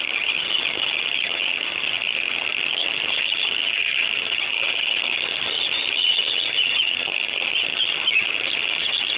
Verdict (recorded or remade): remade